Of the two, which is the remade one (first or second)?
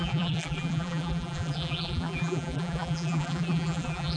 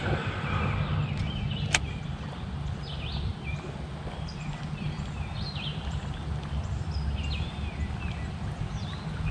first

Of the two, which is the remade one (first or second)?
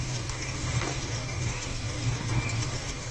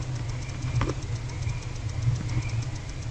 first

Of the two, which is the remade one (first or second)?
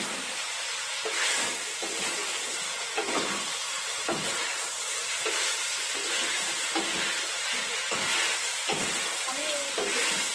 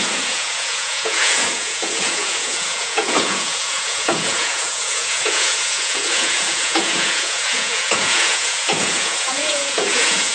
second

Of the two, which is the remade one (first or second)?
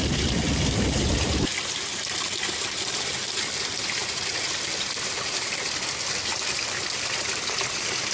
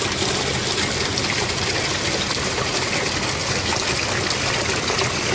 first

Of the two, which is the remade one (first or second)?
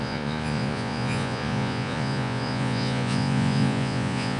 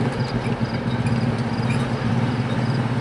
first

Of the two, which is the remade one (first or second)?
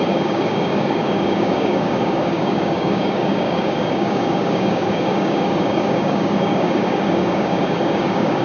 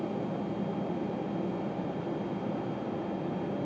first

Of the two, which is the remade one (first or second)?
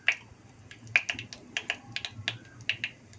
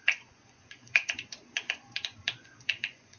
second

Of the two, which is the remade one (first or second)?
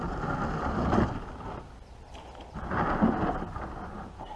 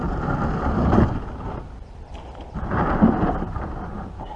second